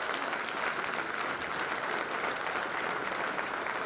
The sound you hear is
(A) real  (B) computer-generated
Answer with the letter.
A